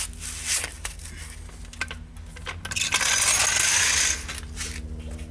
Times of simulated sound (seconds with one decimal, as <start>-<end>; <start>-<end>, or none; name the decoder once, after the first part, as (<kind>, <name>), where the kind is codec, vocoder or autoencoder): none